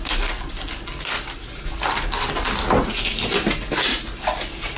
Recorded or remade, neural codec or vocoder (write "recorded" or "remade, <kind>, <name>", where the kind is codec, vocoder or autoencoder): recorded